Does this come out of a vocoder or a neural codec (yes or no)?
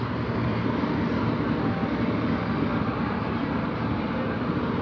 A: no